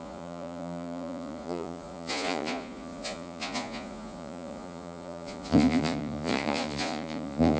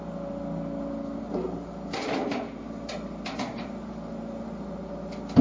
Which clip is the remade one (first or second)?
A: first